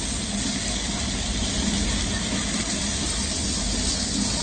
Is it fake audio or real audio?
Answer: real